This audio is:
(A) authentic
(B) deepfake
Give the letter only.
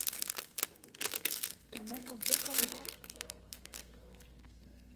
B